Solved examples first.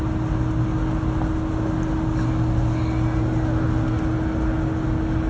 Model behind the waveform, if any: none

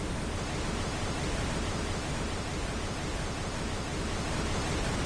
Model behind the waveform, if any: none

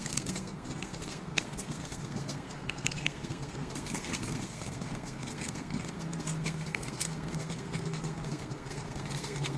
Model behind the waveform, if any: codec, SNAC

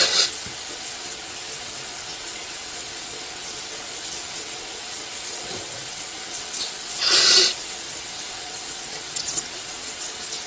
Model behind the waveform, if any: vocoder, WaveNeXt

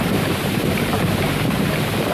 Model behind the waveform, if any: vocoder, BigVGAN v2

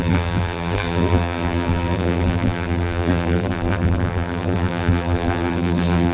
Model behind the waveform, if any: vocoder, BigVGAN v2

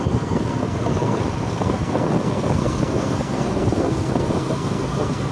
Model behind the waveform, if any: codec, SNAC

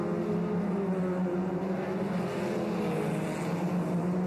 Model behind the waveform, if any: none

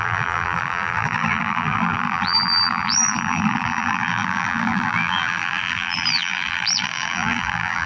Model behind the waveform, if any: vocoder, BigVGAN v2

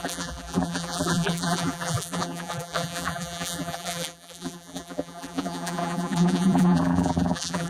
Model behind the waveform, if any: vocoder, BigVGAN v2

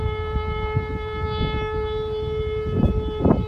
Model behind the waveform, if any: vocoder, BigVGAN v2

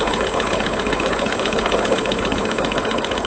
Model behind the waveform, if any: codec, HILCodec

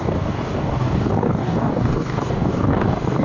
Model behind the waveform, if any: codec, DAC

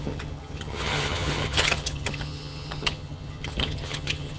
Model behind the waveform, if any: vocoder, HiFi-GAN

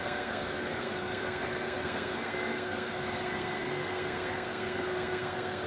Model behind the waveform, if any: codec, SNAC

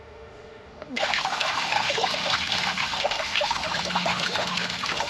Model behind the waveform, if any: autoencoder, DAC-VAE